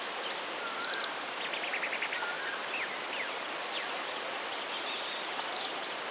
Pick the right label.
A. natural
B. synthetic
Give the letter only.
A